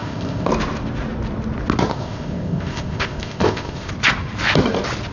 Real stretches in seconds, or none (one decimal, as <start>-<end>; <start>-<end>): 0.5-1.9; 3.9-5.1